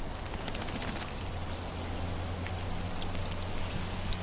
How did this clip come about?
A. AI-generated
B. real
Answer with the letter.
B